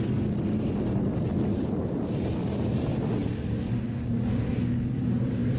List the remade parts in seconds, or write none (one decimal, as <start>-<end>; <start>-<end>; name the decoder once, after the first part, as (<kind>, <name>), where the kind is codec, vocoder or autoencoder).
none